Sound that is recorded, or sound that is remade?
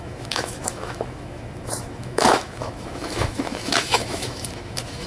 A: remade